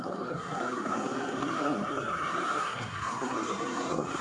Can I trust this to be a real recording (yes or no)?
no